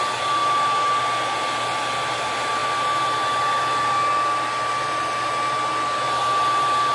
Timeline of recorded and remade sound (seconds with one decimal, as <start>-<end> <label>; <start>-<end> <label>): 0.0-6.9 recorded